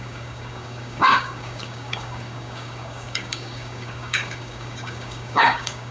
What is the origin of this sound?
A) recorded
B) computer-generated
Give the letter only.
B